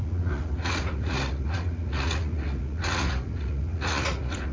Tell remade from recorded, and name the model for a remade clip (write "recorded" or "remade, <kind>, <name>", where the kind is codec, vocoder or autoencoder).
remade, vocoder, Vocos